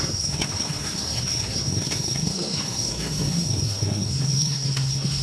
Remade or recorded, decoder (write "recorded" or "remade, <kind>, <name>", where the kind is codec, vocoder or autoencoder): remade, codec, SNAC